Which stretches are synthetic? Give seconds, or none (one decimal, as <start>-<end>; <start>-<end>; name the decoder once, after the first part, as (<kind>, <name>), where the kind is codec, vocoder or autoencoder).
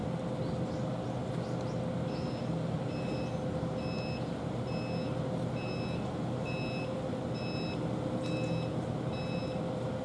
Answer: none